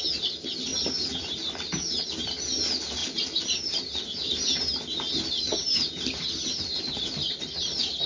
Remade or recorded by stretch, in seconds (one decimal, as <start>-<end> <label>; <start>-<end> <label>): 0.0-8.1 recorded